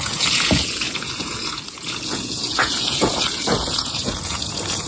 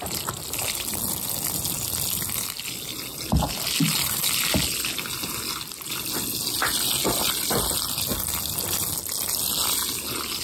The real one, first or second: second